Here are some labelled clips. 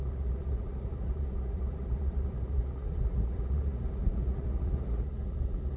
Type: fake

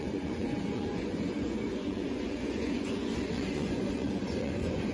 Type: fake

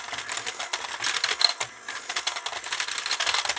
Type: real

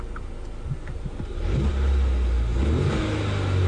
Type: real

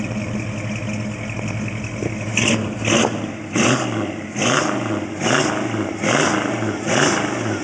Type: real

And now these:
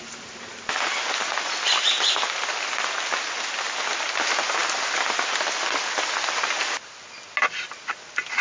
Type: real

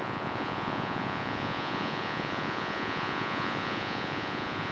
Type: fake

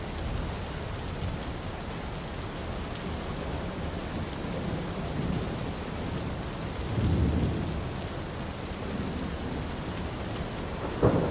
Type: real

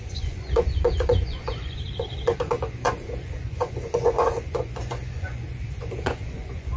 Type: fake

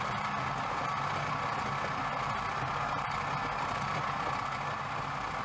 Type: real